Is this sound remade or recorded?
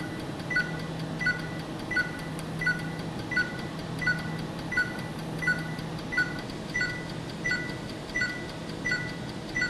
recorded